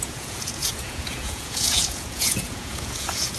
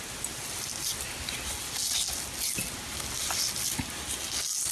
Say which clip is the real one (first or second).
second